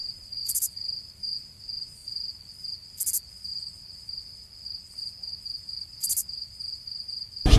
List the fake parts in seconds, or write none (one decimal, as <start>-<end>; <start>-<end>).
0.0-1.2; 2.0-2.5